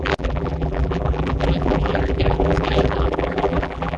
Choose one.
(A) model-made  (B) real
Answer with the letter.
A